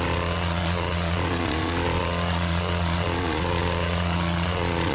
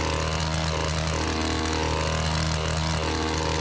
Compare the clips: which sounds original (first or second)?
second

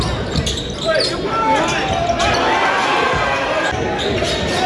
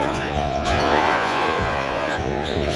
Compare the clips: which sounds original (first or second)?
first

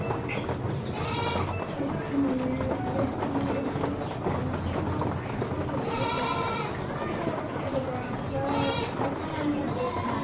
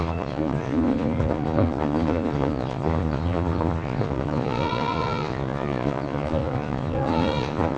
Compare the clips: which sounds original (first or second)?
first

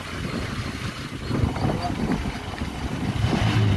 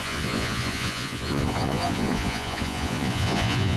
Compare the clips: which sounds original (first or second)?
first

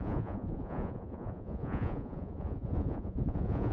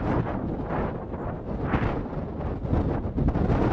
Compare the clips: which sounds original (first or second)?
second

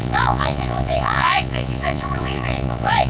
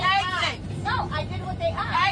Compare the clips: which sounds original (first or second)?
second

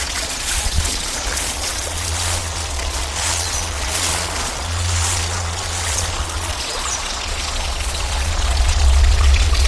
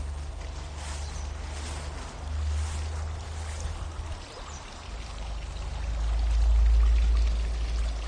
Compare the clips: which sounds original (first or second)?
second